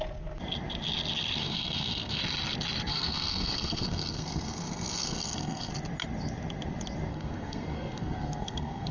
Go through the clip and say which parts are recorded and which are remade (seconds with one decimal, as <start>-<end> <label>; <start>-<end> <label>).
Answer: 0.0-1.4 recorded; 1.4-2.2 remade; 2.2-2.9 recorded; 2.9-5.7 remade; 5.7-7.1 recorded; 7.1-8.9 remade